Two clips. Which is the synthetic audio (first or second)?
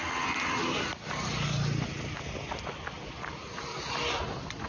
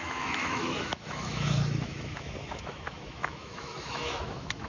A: second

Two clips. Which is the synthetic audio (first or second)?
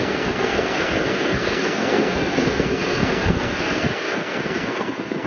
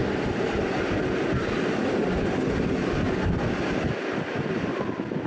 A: first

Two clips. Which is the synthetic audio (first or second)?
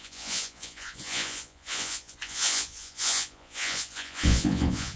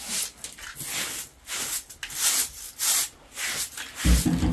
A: first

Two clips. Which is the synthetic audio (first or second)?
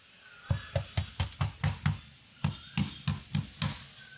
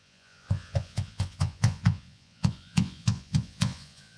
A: second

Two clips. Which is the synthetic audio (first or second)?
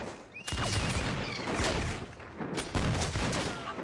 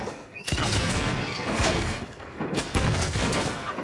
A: second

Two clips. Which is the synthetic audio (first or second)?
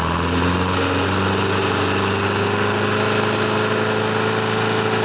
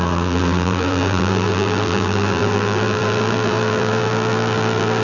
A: second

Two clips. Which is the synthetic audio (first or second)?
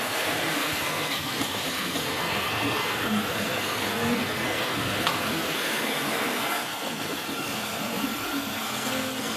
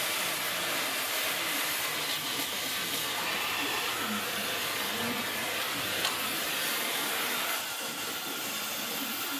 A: first